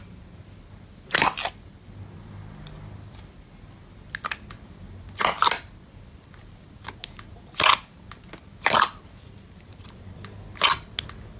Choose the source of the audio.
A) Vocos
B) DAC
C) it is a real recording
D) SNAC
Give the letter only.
C